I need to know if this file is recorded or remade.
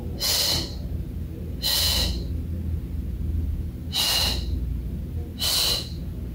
recorded